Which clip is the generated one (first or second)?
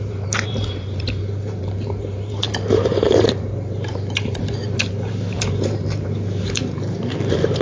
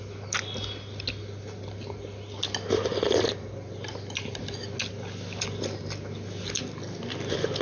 first